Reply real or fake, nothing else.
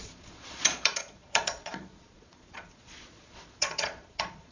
fake